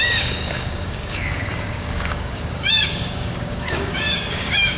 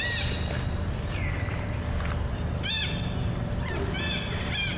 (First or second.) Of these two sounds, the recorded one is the second